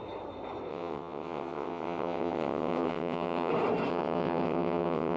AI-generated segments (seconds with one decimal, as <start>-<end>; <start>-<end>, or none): 0.7-3.5; 3.9-5.2